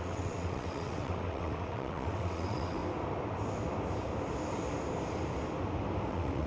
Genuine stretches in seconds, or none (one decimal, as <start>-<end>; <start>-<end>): 2.8-6.1